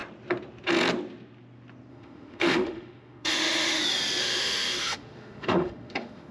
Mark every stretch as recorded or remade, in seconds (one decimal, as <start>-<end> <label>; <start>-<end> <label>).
0.0-1.9 recorded; 1.9-3.8 remade; 3.8-4.2 recorded; 4.2-6.3 remade